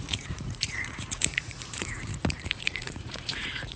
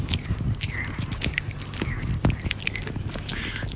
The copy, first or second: first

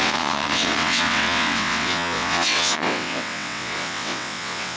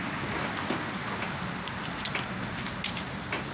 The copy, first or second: first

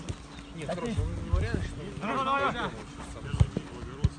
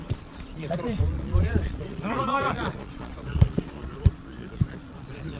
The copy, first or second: second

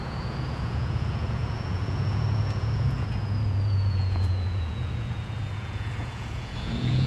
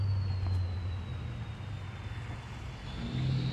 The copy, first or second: first